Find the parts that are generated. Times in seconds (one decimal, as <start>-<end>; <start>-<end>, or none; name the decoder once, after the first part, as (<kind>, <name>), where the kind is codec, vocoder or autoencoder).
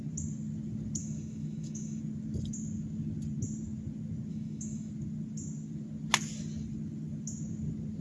1.0-2.0 (autoencoder, DAC-VAE); 4.3-4.9